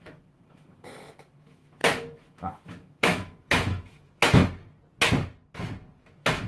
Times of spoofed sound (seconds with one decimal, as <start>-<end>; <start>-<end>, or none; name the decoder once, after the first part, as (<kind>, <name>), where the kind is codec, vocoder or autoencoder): 0.0-4.4 (autoencoder, DAC-VAE); 6.0-6.5